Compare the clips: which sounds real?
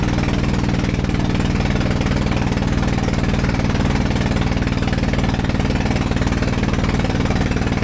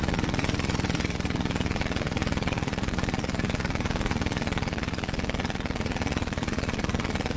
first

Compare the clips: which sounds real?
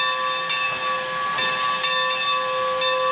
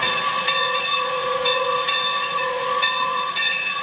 first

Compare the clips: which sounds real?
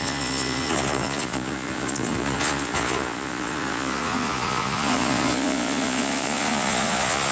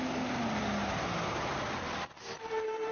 second